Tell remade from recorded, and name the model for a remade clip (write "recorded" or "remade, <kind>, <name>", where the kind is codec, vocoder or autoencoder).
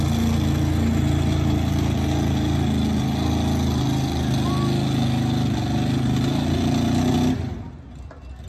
recorded